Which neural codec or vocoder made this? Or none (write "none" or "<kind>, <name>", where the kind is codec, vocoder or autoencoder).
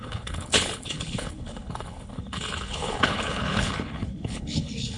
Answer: codec, HILCodec